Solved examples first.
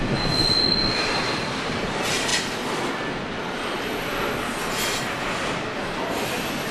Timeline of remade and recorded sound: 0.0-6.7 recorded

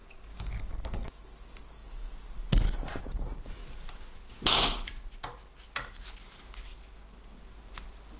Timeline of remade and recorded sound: 0.0-8.2 recorded

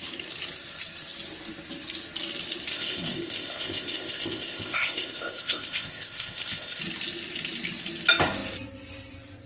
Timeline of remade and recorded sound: 0.0-2.7 recorded; 2.7-6.8 remade; 6.8-9.5 recorded

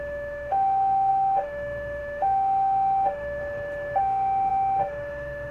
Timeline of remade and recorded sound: 0.0-3.4 remade; 3.4-4.0 recorded; 4.0-5.5 remade

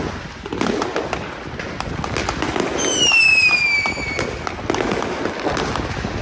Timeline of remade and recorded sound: 0.0-6.2 recorded

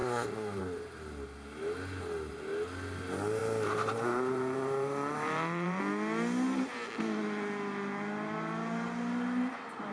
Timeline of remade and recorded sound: 0.0-0.6 remade; 0.6-3.4 recorded; 3.4-5.8 remade; 5.8-9.9 recorded